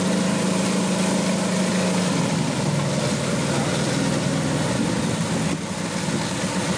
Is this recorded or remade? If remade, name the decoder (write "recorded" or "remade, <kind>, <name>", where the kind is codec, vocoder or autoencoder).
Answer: recorded